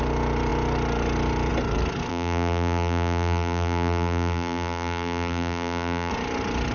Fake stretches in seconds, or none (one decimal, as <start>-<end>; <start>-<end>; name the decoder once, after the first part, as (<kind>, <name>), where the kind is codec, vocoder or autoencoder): 2.1-6.1 (vocoder, BigVGAN v2)